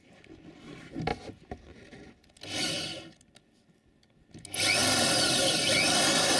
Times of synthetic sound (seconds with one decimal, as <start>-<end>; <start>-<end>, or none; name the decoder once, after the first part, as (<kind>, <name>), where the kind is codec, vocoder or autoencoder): none